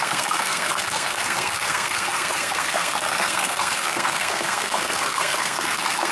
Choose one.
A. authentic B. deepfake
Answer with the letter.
B